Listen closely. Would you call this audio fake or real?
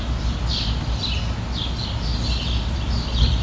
real